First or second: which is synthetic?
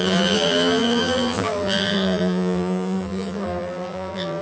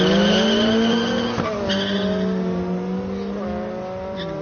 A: first